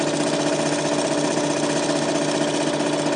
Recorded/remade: recorded